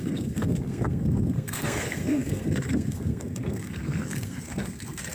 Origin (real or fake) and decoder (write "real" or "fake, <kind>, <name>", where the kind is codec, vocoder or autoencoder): fake, codec, SNAC